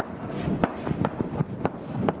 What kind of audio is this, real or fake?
real